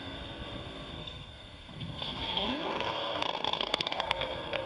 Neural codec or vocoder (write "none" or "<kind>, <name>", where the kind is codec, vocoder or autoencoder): codec, SNAC